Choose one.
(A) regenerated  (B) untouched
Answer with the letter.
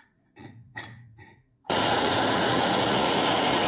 A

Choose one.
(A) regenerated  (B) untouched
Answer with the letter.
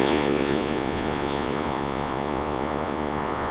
A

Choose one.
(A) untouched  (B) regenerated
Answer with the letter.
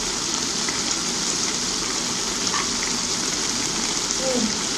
A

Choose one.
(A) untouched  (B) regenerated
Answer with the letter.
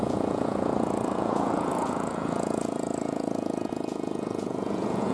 B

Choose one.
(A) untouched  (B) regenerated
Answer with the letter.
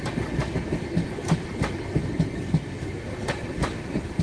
A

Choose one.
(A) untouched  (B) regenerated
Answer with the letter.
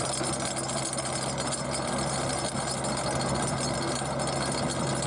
A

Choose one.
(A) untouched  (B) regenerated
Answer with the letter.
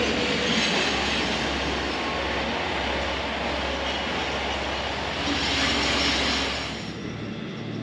A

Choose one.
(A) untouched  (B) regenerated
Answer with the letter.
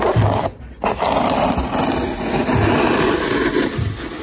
A